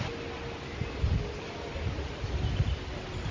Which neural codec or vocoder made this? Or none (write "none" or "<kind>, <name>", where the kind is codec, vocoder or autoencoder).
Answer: none